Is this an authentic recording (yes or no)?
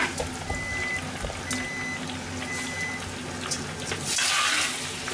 yes